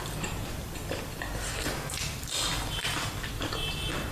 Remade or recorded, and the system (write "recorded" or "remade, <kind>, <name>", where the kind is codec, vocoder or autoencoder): remade, vocoder, BigVGAN v2